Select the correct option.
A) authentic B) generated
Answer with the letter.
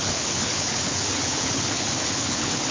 B